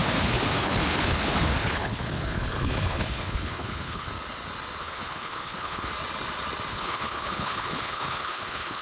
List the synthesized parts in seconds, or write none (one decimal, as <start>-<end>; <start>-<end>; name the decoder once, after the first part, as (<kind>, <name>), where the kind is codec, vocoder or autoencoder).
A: 0.0-4.1 (codec, HILCodec); 4.8-5.9; 6.7-8.8